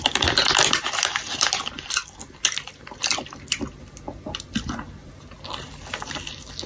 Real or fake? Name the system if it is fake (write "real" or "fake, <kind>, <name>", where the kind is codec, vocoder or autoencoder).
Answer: real